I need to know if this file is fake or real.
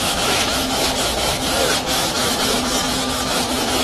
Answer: fake